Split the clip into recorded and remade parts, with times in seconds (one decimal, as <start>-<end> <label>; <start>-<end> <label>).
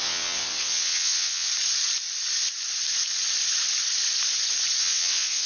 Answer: 0.0-1.5 remade; 1.5-4.8 recorded; 4.8-5.5 remade